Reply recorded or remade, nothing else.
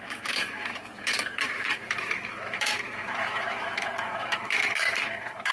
remade